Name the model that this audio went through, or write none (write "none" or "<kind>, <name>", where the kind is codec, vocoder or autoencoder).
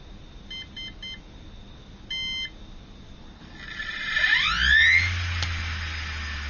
none